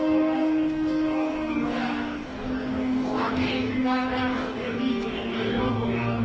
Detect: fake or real fake